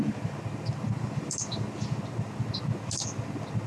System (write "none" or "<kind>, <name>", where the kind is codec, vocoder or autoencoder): none